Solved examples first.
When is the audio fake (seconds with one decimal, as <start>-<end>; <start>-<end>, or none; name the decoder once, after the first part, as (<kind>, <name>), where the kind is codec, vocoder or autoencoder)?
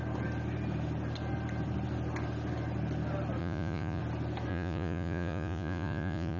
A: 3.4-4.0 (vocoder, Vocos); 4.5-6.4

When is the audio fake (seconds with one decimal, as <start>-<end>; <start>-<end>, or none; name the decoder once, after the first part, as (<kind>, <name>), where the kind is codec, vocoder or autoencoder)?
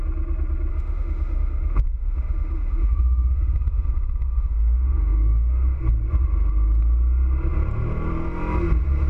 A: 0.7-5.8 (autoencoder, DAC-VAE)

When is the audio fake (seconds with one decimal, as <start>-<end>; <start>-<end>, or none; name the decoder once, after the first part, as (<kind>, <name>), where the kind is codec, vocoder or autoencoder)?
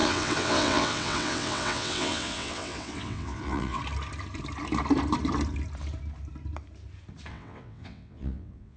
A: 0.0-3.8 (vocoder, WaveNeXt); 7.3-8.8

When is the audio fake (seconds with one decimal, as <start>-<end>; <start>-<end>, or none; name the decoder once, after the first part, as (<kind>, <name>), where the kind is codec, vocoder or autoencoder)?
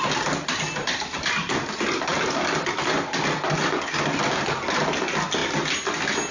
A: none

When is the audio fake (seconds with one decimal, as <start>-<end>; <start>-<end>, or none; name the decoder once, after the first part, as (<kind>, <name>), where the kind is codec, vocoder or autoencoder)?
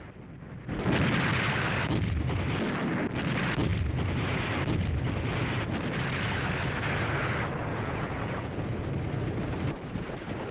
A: 7.7-8.7 (vocoder, Vocos)